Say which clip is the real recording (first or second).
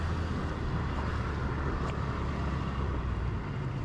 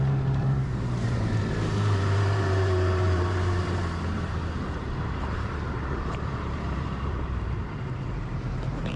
first